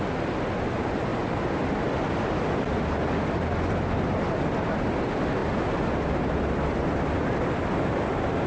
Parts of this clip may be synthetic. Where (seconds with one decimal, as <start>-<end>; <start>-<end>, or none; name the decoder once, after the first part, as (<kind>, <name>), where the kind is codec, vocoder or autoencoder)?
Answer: none